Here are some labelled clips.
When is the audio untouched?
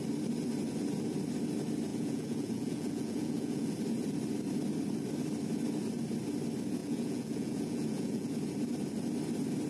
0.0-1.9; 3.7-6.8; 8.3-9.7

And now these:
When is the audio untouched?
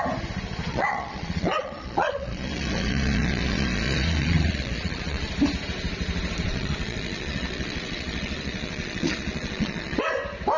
0.0-0.7; 5.3-6.5; 10.0-10.6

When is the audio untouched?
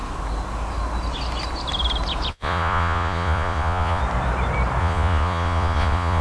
0.0-2.3; 4.0-4.8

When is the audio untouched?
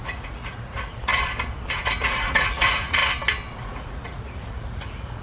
1.1-1.7; 3.0-3.6